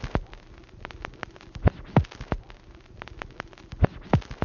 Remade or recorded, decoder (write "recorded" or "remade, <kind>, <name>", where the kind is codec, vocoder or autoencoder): recorded